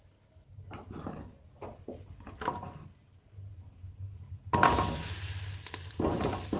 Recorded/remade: recorded